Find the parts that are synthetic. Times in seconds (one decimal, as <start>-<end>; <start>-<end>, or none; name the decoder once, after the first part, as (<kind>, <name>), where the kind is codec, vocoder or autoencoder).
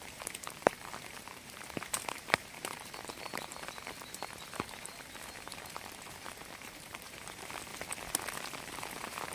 0.0-7.7 (vocoder, BigVGAN v2); 8.6-9.3